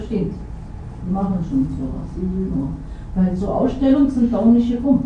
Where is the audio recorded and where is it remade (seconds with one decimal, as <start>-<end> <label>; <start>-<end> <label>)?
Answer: 0.0-5.1 recorded